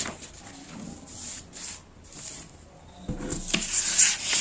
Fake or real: real